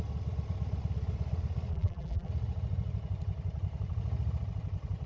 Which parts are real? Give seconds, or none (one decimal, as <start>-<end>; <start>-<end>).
0.0-1.7; 2.3-5.1